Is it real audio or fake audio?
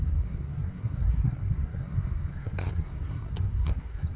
fake